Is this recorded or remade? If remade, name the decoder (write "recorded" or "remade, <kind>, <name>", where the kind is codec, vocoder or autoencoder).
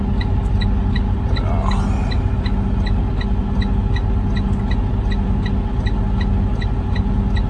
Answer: recorded